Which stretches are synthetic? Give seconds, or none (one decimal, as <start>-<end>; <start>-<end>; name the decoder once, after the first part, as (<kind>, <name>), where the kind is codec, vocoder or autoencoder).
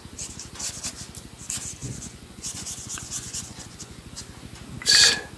1.8-4.1 (vocoder, Vocos)